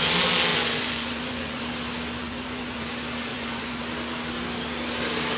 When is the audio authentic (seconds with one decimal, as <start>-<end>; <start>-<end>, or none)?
0.0-0.5; 1.6-2.2; 2.9-3.3; 3.8-5.4